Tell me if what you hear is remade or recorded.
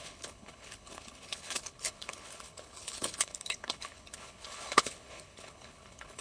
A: remade